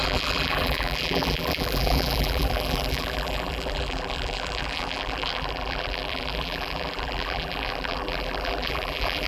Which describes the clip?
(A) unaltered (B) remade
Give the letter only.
B